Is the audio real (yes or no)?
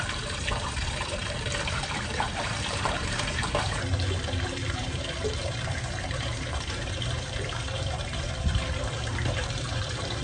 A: no